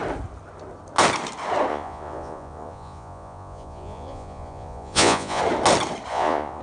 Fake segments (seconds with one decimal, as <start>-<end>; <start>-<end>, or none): 1.7-5.4; 6.1-6.6